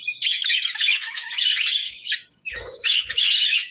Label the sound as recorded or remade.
remade